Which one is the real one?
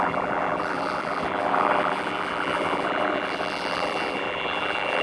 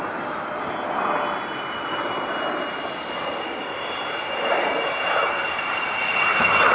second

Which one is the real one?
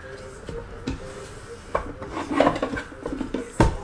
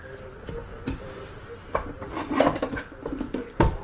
first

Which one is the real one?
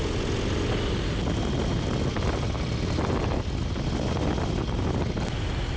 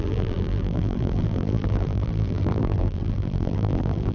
first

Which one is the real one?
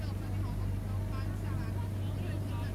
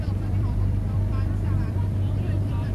first